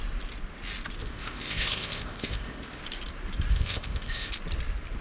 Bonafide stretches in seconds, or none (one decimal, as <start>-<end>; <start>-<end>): 0.0-1.0; 2.8-3.5; 4.3-5.0